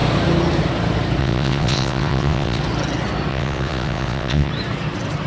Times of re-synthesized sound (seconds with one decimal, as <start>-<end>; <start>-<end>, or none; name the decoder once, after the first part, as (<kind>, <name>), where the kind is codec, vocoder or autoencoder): 1.2-2.6 (vocoder, WaveNeXt); 3.3-4.5